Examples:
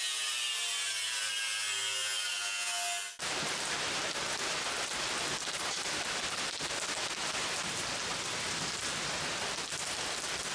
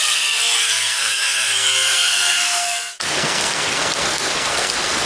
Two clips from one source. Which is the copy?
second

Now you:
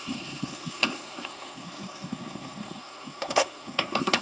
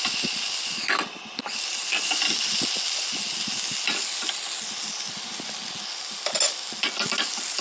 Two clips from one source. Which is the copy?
first